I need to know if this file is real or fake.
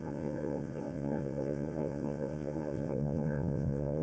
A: fake